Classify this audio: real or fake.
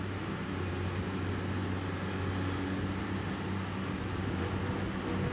real